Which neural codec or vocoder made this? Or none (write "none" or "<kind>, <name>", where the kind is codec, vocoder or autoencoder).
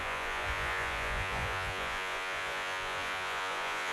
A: vocoder, Vocos